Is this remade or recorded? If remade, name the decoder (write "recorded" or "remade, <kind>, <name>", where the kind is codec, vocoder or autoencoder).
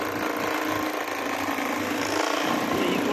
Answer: recorded